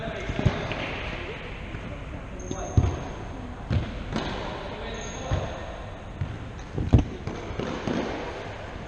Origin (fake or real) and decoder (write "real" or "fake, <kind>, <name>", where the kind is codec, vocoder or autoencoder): real